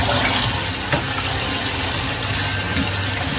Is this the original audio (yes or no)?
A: yes